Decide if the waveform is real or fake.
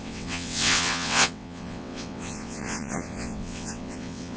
fake